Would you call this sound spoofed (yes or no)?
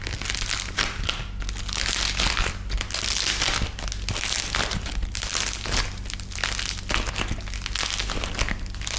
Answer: no